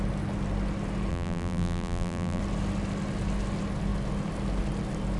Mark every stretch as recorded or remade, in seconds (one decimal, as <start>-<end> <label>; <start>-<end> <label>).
0.0-1.1 recorded; 1.1-2.4 remade; 2.4-5.2 recorded